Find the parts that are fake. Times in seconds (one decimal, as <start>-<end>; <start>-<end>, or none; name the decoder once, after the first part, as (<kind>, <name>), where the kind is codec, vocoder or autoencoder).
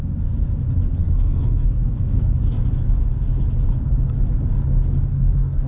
1.0-2.4 (codec, SNAC); 5.1-5.7